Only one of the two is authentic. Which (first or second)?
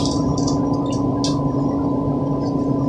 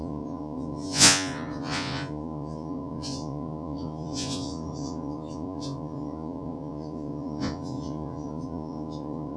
first